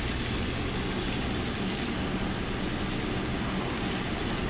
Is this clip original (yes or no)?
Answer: yes